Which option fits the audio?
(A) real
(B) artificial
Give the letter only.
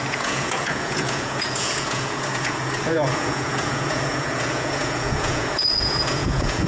B